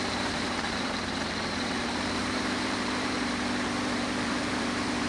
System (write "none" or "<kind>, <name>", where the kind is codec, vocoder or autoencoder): vocoder, BigVGAN v2